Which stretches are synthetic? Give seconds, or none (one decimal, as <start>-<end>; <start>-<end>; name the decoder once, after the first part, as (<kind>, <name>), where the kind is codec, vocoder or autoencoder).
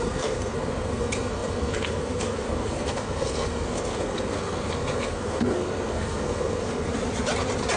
0.0-6.9 (codec, SNAC)